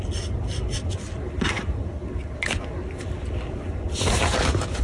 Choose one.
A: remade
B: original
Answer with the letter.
B